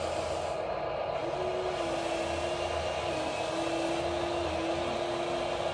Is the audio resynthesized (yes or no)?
no